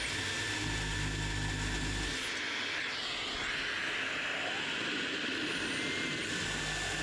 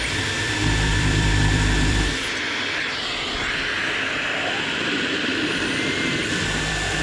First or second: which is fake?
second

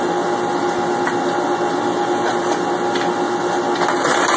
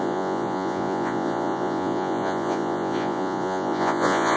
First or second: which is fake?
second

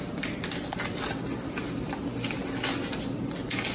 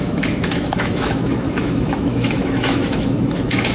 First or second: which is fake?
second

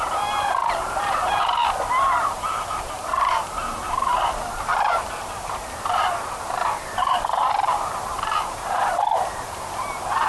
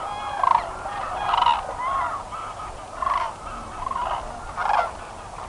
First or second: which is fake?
first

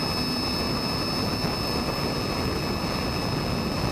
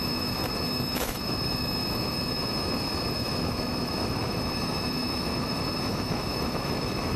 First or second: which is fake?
second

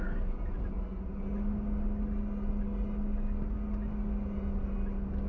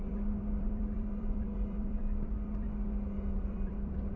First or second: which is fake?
second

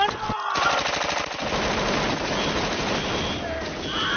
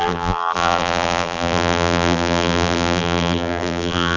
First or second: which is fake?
second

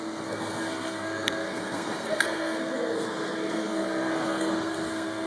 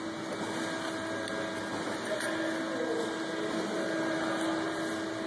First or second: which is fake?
first